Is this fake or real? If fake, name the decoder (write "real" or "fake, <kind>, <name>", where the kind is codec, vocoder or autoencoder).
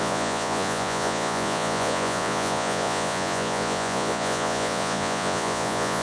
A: fake, vocoder, Vocos